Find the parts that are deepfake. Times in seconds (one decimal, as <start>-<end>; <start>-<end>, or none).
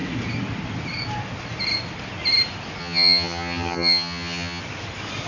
2.8-4.6